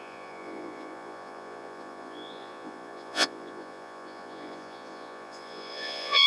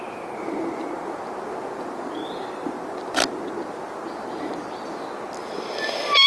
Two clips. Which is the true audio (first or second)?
second